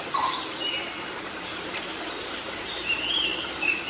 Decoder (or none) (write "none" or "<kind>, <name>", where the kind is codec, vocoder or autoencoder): vocoder, BigVGAN v2